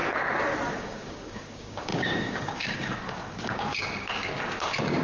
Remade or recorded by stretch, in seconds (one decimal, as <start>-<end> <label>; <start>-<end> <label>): 0.0-0.7 recorded; 0.7-5.0 remade